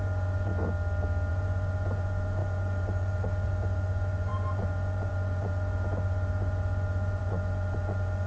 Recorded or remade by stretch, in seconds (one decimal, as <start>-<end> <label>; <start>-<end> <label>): 0.0-0.5 remade; 0.5-1.3 recorded; 1.3-8.3 remade